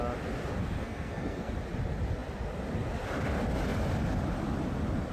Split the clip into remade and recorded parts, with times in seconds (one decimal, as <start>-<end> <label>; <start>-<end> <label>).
0.0-0.6 recorded; 0.6-1.5 remade; 1.5-5.1 recorded